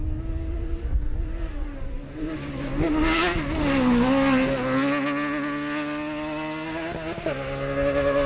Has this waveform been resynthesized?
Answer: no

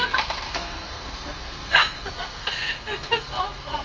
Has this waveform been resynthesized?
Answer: yes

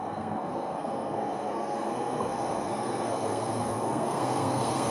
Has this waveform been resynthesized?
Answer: yes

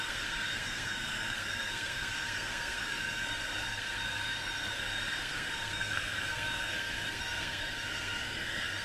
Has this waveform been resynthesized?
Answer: yes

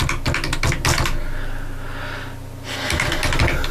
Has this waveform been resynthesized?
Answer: no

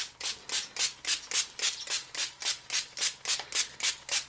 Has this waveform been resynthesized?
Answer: no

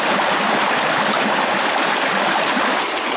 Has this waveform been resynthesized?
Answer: no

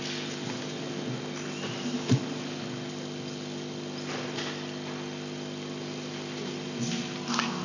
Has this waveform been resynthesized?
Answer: no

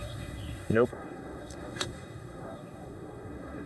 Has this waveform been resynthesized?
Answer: yes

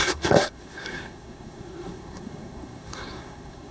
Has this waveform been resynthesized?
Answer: yes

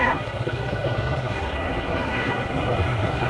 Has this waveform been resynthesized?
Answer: yes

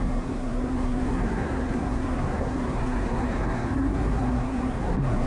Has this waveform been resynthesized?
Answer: yes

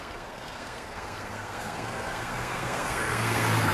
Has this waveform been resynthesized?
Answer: yes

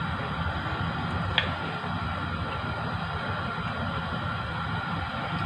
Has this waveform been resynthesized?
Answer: no